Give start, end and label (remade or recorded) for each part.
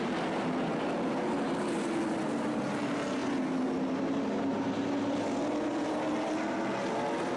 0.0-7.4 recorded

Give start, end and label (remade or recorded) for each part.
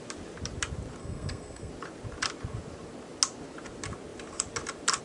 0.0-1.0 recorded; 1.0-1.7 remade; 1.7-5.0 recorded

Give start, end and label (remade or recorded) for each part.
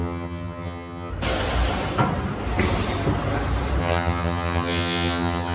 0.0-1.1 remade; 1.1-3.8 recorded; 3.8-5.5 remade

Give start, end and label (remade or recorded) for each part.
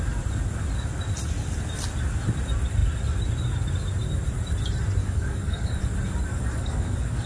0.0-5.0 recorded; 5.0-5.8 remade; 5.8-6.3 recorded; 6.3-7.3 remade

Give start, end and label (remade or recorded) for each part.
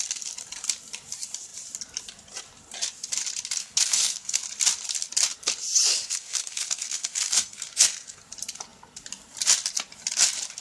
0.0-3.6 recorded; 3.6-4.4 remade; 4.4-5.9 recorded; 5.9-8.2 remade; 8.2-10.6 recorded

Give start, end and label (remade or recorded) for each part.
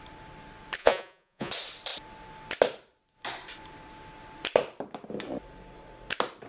0.0-0.8 recorded; 0.8-1.5 remade; 1.5-6.5 recorded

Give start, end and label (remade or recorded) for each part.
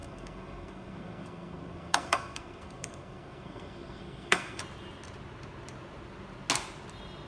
0.0-4.6 remade; 4.6-7.3 recorded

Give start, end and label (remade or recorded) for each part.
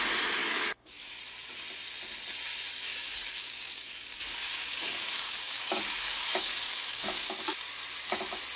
0.0-0.4 recorded; 0.4-1.2 remade; 1.2-2.9 recorded; 2.9-7.6 remade; 7.6-8.6 recorded